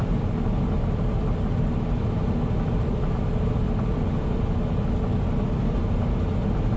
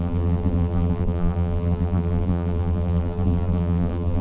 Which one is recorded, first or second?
first